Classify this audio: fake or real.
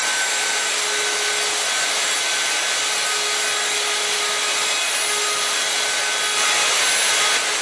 real